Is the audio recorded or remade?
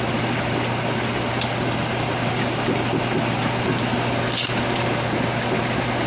recorded